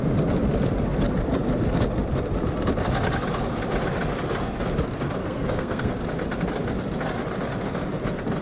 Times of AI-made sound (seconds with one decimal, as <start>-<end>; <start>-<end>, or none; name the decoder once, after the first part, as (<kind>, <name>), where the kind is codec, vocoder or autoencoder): 5.2-5.9 (codec, SNAC)